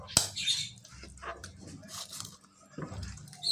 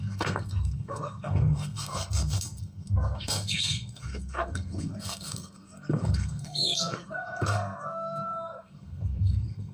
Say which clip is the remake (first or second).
second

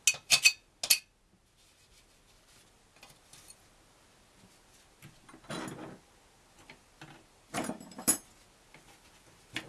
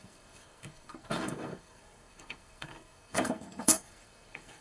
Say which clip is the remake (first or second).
second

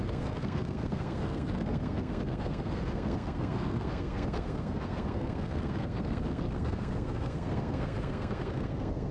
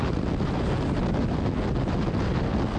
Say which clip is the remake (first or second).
first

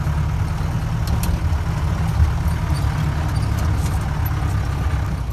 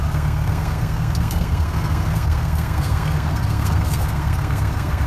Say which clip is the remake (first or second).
second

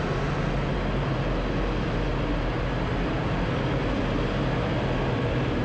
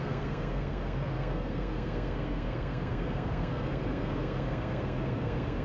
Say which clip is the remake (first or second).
second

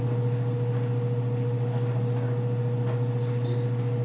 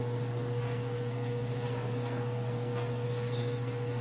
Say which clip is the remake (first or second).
second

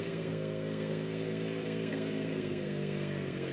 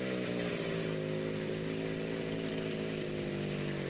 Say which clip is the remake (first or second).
first